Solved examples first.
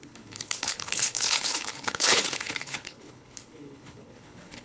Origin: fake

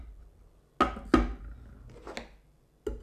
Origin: real